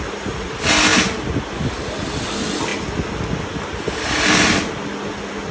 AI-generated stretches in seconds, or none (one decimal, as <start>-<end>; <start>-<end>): none